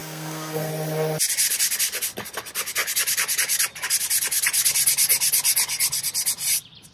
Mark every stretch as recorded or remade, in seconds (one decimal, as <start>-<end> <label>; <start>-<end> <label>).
0.0-0.7 remade; 0.7-6.9 recorded